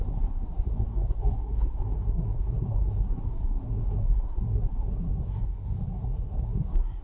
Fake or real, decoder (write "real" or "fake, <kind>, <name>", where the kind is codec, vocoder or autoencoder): fake, codec, SNAC